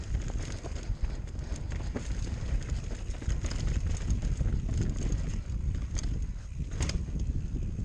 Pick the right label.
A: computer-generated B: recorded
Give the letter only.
B